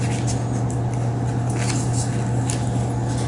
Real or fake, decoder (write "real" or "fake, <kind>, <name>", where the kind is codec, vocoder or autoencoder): real